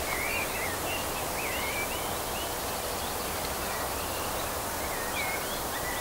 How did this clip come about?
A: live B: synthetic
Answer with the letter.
A